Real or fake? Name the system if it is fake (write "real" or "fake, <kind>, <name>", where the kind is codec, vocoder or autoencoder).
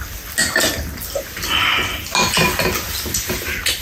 real